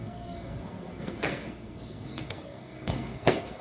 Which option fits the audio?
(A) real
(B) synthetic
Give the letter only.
B